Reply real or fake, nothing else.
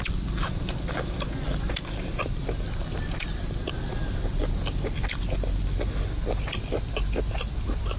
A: real